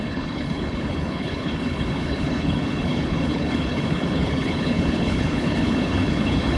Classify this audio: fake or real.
fake